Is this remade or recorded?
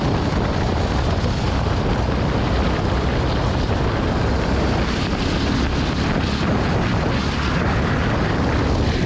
recorded